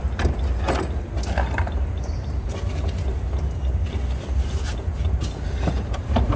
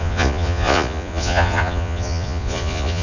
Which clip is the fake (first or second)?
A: second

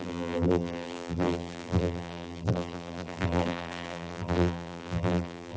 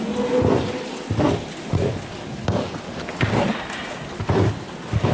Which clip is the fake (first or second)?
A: first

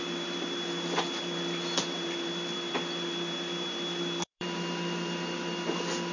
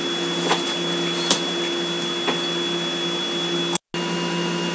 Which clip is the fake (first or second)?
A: first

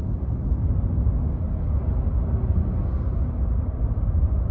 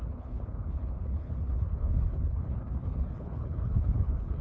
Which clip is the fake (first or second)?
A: second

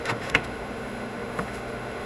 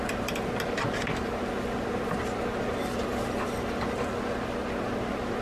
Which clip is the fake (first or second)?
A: first